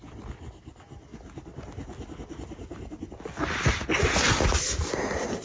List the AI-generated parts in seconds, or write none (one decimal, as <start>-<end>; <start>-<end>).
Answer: none